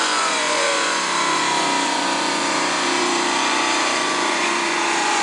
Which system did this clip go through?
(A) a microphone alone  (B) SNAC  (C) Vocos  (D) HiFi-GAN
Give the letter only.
C